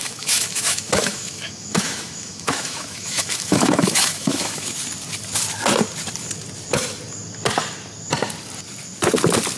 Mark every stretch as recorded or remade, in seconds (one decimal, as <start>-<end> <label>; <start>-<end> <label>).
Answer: 0.0-4.8 remade; 4.8-9.6 recorded